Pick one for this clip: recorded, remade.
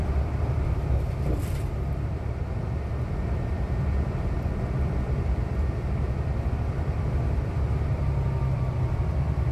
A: remade